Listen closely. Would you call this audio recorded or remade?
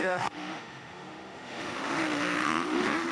remade